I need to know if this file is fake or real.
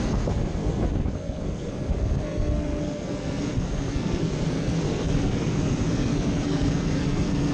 fake